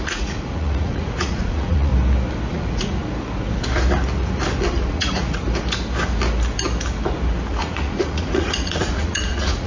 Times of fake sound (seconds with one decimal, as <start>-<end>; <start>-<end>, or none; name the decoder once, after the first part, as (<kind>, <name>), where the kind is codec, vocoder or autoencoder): 0.0-1.9 (vocoder, Vocos); 2.5-3.0; 4.9-5.4; 7.5-9.7